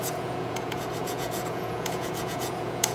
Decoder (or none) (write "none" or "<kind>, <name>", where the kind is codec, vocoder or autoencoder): vocoder, Vocos